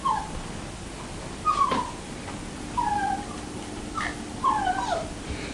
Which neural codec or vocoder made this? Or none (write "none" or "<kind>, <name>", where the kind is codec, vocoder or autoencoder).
none